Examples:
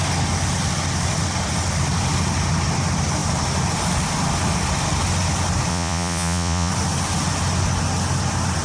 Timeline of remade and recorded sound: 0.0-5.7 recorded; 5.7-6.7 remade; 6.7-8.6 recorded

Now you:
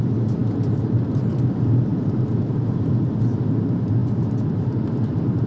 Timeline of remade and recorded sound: 0.0-1.9 remade; 1.9-3.5 recorded; 3.5-4.0 remade; 4.0-4.5 recorded; 4.5-5.5 remade

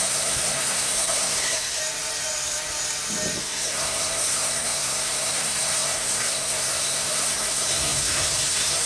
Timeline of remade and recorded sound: 0.0-1.8 remade; 1.8-3.4 recorded; 3.4-8.9 remade

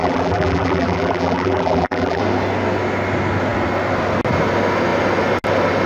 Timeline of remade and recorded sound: 0.0-2.2 remade; 2.2-5.9 recorded

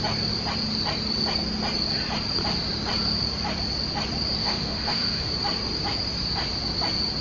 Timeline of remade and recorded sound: 0.0-4.4 recorded; 4.4-5.3 remade; 5.3-7.2 recorded